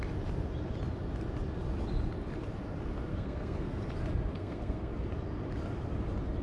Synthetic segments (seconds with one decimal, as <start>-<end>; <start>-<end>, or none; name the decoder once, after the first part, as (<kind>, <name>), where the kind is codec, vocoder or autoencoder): 3.1-3.8 (codec, SNAC); 4.3-4.9